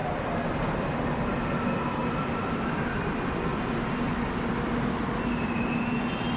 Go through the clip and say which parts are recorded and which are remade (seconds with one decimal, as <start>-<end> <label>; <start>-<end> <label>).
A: 0.0-2.0 recorded; 2.0-5.8 remade; 5.8-6.4 recorded